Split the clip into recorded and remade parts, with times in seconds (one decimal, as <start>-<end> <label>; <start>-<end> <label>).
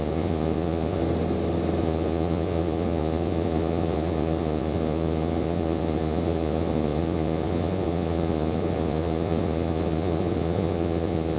0.0-1.0 remade; 1.0-1.8 recorded; 1.8-11.4 remade